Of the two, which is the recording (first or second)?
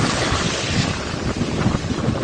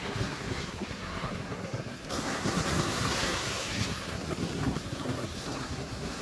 first